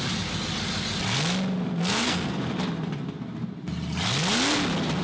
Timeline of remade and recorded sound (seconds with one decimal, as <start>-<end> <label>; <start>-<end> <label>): 0.0-1.7 recorded; 1.7-2.3 remade; 2.3-5.0 recorded